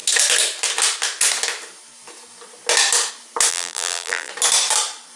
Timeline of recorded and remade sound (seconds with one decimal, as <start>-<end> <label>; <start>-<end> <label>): 0.0-3.5 recorded; 3.5-4.3 remade; 4.3-5.2 recorded

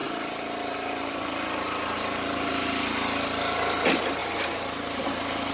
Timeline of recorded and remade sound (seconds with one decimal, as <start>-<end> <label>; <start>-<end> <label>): 0.0-2.9 remade; 2.9-4.2 recorded; 4.2-5.0 remade; 5.0-5.5 recorded

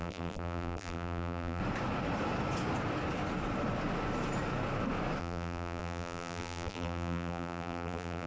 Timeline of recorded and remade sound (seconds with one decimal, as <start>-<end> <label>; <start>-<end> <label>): 0.0-1.6 remade; 1.6-5.2 recorded; 5.2-8.3 remade

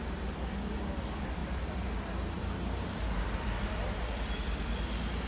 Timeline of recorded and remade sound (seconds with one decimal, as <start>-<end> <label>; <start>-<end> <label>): 0.0-1.4 recorded; 1.4-4.0 remade; 4.0-5.3 recorded

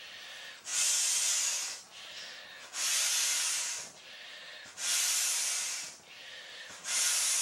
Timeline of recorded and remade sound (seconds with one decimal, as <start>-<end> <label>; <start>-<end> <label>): 0.0-6.2 recorded; 6.2-7.0 remade; 7.0-7.4 recorded

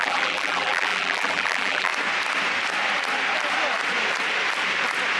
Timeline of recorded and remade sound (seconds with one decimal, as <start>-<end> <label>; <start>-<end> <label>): 0.0-1.9 remade; 1.9-5.2 recorded

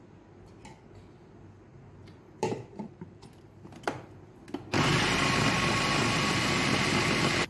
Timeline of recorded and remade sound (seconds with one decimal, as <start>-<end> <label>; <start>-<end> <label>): 0.0-1.7 recorded; 1.7-3.4 remade; 3.4-7.5 recorded